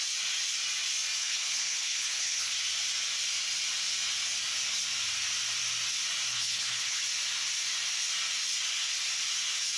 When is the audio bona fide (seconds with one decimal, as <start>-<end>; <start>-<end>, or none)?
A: 0.0-1.2; 2.5-6.3; 7.0-9.8